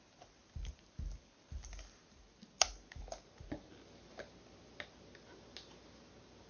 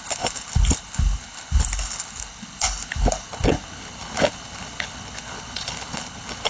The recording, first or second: first